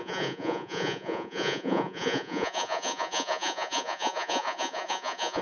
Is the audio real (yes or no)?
no